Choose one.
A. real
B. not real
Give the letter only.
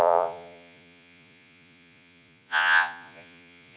B